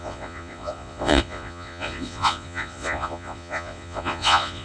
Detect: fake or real fake